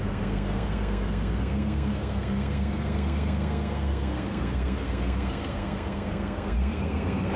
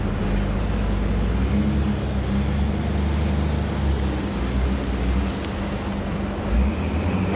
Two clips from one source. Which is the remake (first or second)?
first